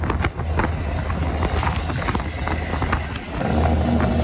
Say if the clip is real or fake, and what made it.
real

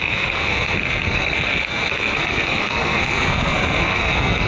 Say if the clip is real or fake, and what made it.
fake, codec, SNAC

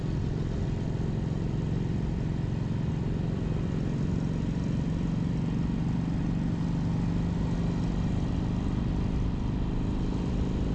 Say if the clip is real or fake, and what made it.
real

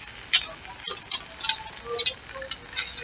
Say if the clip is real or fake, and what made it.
real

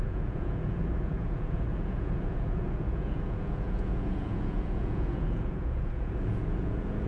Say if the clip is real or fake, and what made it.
fake, vocoder, Vocos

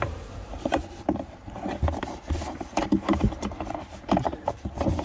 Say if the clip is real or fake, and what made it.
fake, vocoder, BigVGAN v2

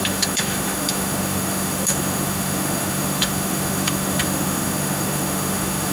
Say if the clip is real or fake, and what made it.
fake, autoencoder, DAC-VAE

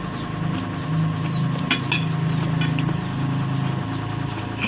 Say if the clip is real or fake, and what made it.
real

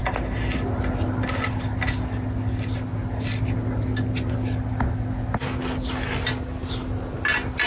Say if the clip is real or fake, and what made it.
real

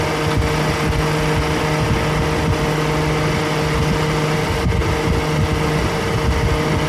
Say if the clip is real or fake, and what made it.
real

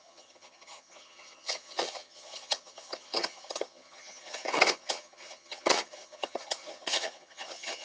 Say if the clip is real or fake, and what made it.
fake, vocoder, HiFi-GAN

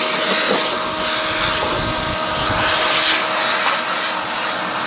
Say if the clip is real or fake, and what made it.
real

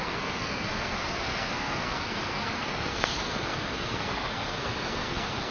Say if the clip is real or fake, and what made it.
fake, codec, SNAC